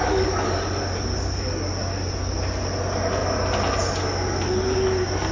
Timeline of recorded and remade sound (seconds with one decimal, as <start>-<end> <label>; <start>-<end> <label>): 0.0-0.6 remade; 0.6-5.3 recorded